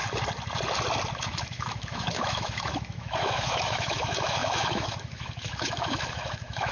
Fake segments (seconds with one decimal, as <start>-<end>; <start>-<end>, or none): 1.2-6.7

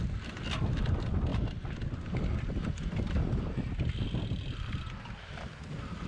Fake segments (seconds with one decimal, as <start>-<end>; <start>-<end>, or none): none

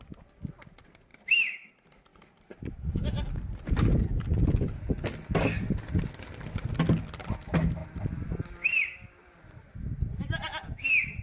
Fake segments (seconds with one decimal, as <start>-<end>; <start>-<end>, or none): 1.1-1.7; 2.1-2.9; 7.8-9.4